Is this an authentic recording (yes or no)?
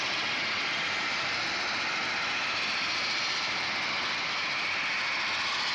yes